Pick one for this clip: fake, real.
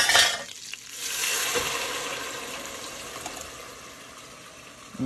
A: real